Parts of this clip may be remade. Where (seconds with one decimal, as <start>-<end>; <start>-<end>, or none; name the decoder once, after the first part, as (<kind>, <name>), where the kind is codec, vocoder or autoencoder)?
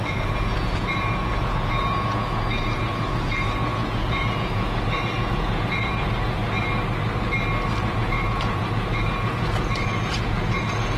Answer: 0.0-6.4 (vocoder, Vocos); 7.9-11.0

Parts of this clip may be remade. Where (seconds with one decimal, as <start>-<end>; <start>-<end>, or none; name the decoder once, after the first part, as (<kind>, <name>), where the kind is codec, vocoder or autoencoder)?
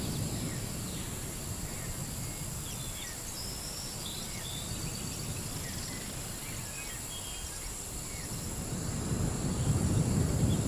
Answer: none